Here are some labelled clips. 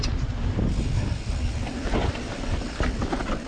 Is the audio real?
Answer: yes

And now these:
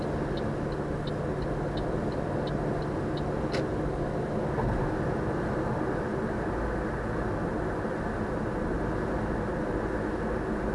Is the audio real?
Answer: yes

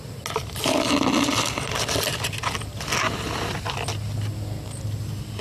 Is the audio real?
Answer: yes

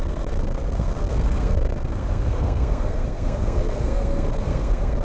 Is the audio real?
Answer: no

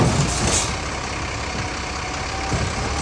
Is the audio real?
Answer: yes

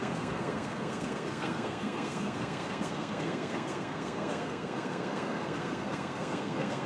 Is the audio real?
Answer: no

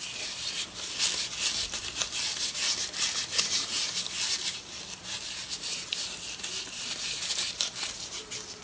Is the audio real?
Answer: yes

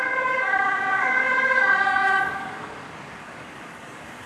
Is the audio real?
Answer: no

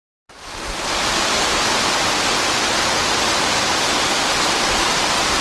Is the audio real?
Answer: yes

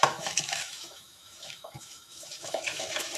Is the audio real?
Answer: no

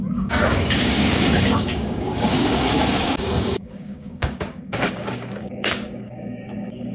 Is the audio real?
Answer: no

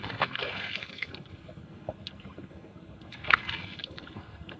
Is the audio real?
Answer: no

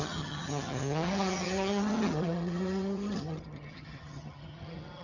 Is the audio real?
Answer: no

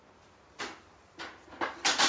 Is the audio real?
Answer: yes